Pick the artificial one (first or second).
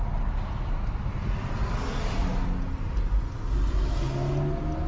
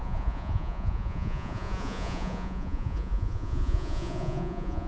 second